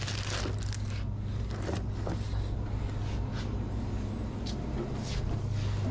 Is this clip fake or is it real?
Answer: real